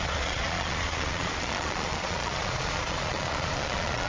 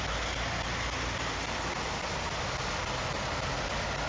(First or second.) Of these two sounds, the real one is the second